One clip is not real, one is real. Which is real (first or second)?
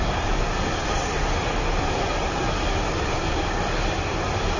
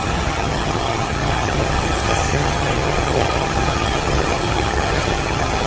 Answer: first